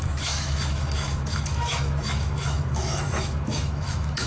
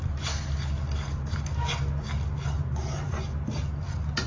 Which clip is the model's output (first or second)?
first